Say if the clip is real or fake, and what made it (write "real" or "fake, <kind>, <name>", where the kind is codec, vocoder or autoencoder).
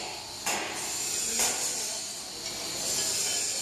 real